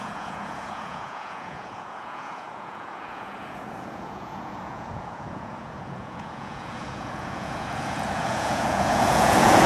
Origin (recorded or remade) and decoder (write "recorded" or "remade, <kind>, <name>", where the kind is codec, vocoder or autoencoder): remade, vocoder, Vocos